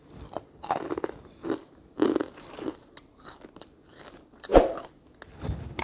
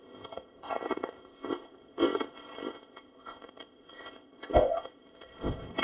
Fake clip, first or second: second